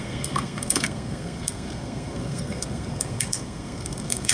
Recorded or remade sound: remade